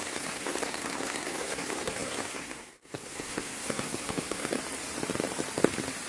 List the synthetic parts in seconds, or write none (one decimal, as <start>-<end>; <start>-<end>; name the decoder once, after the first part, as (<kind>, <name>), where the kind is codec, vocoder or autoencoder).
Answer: 0.0-4.6 (codec, SNAC)